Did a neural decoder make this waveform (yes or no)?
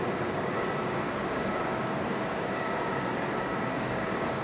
yes